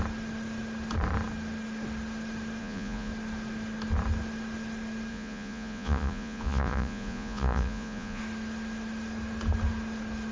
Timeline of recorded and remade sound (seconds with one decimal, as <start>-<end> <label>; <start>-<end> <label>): 0.0-2.6 recorded; 2.6-3.1 remade; 3.1-5.1 recorded; 5.1-8.2 remade; 8.2-10.3 recorded